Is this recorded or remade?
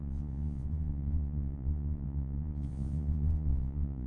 remade